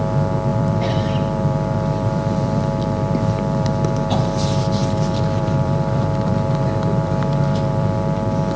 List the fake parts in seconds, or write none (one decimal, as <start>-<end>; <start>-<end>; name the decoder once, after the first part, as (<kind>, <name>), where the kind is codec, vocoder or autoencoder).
0.5-3.7 (vocoder, BigVGAN v2); 4.8-8.6